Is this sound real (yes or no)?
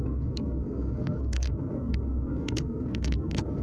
no